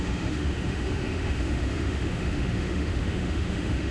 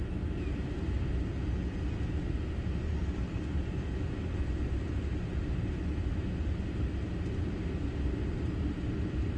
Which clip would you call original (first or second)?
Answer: second